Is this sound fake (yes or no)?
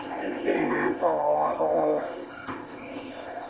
yes